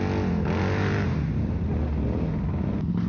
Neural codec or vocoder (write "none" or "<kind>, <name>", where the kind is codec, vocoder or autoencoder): none